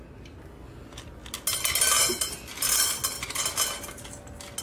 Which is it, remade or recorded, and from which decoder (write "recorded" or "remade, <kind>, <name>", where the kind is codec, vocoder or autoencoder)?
recorded